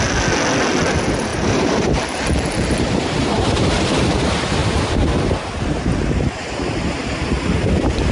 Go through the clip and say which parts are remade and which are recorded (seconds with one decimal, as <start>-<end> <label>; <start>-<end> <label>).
0.0-1.3 recorded; 1.3-3.9 remade; 3.9-4.6 recorded; 4.6-7.0 remade; 7.0-8.1 recorded